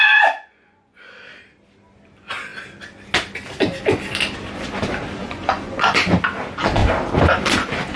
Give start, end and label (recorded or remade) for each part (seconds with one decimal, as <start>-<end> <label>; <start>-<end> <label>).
0.0-1.1 remade; 1.1-5.2 recorded; 5.2-6.0 remade; 6.0-8.0 recorded